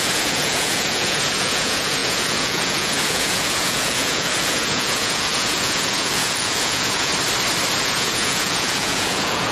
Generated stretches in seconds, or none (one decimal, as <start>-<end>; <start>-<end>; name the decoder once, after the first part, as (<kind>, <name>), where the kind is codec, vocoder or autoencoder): 0.0-7.1 (vocoder, Vocos); 7.8-9.5